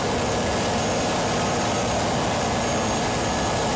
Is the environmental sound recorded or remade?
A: recorded